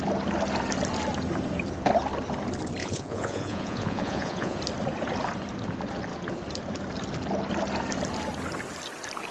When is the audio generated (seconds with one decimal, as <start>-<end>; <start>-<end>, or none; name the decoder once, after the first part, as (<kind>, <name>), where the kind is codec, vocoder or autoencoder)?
2.8-4.6 (vocoder, Vocos)